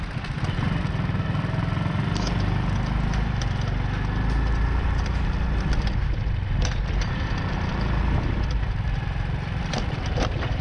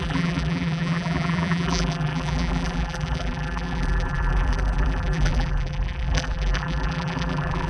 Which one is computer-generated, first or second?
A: second